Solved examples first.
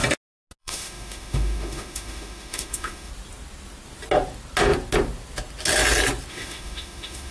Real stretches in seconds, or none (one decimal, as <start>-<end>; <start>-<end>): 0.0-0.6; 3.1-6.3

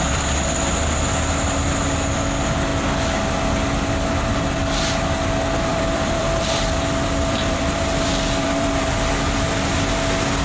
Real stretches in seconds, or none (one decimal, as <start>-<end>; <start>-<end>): 0.0-5.7; 9.1-10.4

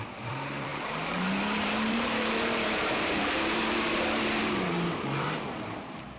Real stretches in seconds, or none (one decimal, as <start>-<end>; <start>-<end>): none